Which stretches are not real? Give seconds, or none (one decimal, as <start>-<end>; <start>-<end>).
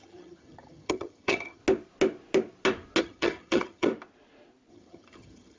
0.0-1.6; 3.0-3.9; 4.7-5.6